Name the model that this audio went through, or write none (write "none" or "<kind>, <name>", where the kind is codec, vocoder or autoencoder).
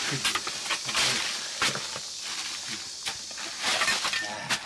none